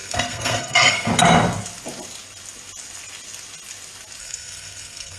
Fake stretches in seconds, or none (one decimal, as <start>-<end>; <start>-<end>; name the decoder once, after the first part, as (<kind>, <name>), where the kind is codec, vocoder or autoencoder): 0.0-1.1 (codec, SNAC); 4.2-5.2